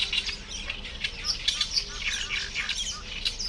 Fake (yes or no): no